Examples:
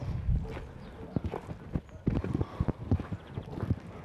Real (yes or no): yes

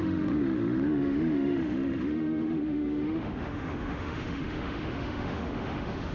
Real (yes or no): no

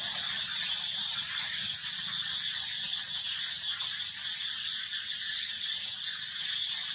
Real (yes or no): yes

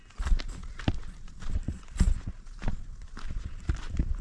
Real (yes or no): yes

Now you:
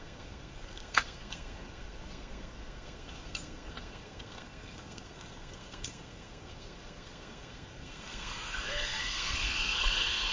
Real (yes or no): no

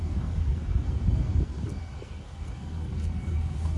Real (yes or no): no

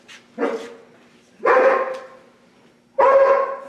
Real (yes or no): yes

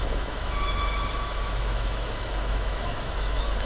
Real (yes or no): no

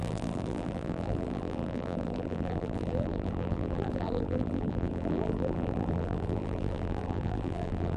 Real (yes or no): no